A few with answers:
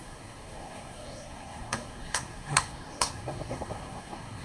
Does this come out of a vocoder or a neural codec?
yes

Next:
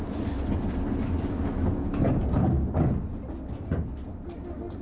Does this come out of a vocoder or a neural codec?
no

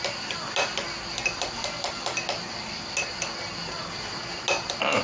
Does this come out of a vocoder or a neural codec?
no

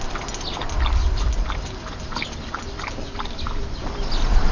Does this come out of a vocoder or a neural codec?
no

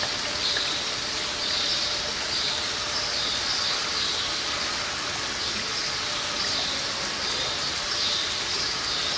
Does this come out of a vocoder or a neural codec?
no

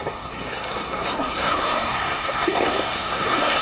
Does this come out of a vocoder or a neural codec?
yes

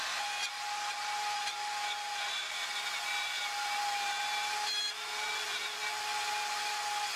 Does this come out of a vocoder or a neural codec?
no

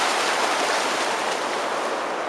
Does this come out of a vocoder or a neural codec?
no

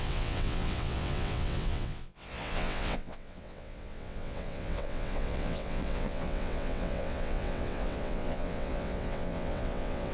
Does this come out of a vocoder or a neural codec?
yes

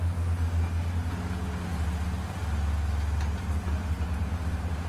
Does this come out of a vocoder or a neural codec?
no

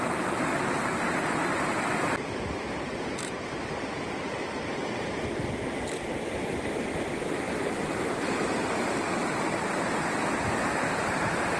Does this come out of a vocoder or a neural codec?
no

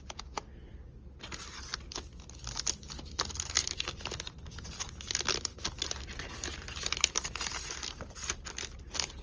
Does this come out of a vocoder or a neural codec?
no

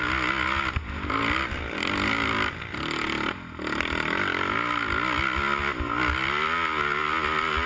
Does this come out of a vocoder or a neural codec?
no